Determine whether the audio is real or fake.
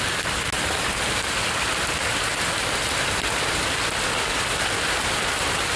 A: real